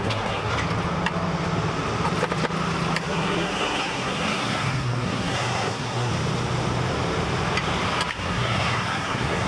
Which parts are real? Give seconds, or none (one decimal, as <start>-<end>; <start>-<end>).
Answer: 0.5-3.0; 6.1-8.1